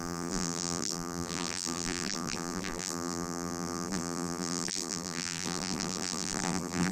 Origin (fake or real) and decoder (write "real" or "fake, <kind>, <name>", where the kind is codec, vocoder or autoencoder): fake, vocoder, BigVGAN v2